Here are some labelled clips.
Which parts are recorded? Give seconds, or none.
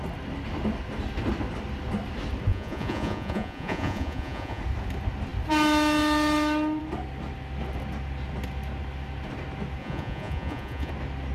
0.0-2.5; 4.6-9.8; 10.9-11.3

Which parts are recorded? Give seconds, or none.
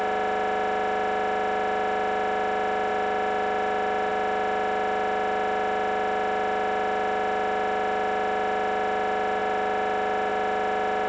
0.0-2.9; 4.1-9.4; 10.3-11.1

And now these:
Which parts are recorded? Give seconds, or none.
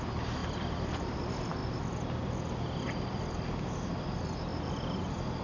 0.0-5.4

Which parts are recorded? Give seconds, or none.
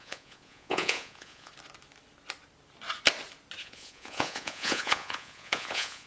1.5-3.6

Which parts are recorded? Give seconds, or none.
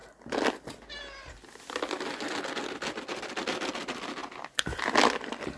0.0-3.4